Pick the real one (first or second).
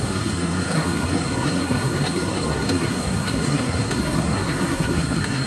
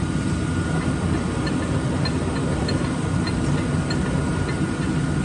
second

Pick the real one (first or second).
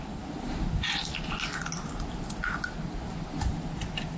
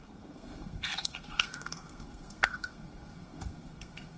first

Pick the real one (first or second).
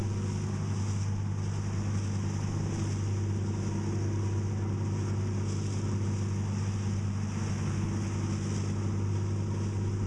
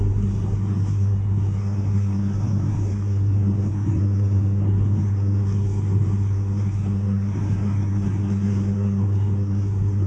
first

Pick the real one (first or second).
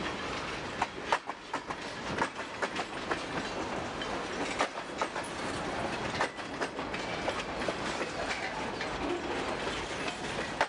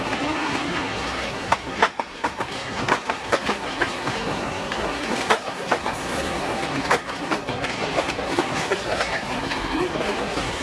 first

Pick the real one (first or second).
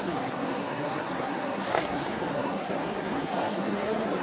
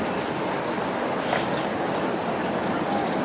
second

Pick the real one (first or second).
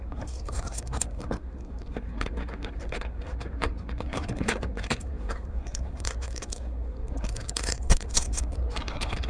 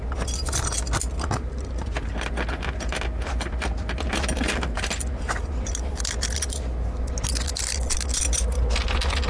second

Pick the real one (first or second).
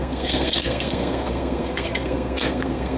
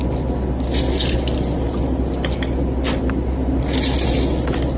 second